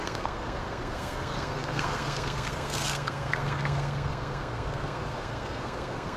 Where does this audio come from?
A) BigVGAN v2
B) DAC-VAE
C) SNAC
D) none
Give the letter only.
C